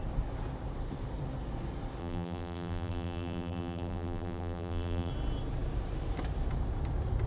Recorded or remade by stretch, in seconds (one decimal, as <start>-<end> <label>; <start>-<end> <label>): 0.0-2.0 recorded; 2.0-5.1 remade; 5.1-7.3 recorded